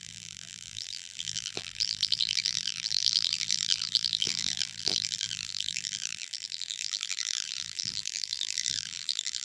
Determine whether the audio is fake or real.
fake